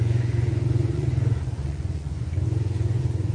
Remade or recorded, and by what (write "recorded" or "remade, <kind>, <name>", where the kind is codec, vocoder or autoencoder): remade, vocoder, Vocos